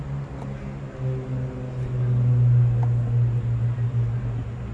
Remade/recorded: recorded